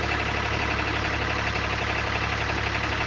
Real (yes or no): yes